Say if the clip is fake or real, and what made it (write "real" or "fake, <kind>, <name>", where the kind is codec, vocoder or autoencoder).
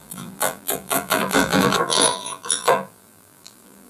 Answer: fake, vocoder, BigVGAN v2